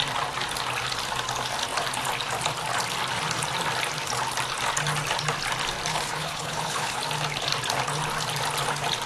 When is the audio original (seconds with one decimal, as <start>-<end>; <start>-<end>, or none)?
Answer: 0.0-5.9; 7.0-9.1